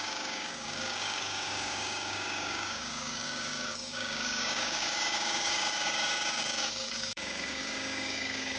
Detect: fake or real fake